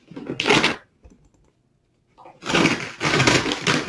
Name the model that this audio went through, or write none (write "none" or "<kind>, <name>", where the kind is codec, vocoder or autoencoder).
none